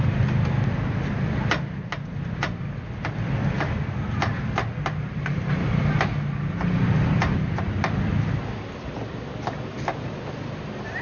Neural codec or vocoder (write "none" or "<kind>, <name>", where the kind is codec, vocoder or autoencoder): none